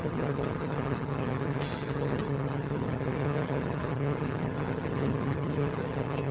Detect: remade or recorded remade